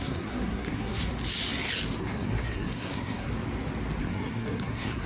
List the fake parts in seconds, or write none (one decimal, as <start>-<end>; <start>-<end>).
0.0-1.1; 2.0-3.3; 4.0-5.1